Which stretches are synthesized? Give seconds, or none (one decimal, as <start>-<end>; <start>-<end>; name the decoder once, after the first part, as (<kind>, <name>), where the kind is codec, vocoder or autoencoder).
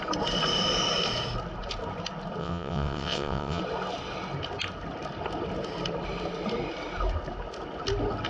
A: 2.4-3.6 (vocoder, WaveNeXt)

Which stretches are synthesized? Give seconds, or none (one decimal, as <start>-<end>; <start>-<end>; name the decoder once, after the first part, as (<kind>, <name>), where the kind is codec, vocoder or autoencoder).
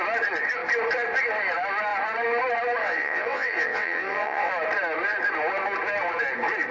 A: 2.8-4.5 (vocoder, WaveNeXt)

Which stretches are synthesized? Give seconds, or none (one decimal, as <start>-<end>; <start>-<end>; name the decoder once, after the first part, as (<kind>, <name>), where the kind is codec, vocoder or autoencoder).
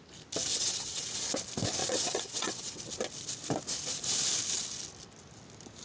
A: 0.5-1.3 (vocoder, WaveNeXt); 1.8-2.8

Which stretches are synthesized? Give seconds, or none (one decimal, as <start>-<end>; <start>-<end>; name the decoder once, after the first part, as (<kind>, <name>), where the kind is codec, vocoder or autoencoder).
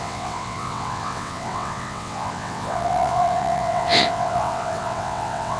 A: 0.0-5.6 (vocoder, WaveNeXt)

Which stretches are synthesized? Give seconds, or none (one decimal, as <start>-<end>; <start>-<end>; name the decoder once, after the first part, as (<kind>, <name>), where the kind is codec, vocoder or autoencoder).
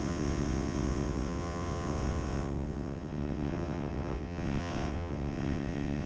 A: 0.0-6.1 (vocoder, WaveNeXt)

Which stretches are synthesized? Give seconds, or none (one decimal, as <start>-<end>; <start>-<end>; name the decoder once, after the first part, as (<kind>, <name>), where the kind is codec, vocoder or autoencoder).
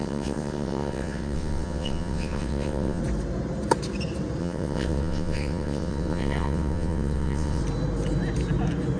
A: 0.0-3.0 (vocoder, WaveNeXt); 4.4-7.6